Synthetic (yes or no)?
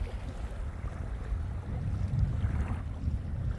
no